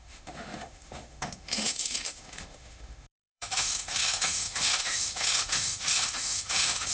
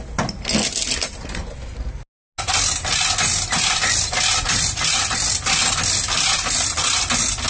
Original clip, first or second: second